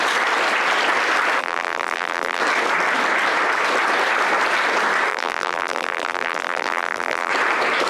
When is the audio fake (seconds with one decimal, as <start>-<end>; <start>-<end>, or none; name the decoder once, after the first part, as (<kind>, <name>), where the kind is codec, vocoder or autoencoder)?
1.4-2.4 (vocoder, BigVGAN v2); 5.1-7.3